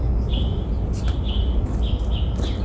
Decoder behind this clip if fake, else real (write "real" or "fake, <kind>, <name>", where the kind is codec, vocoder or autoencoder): real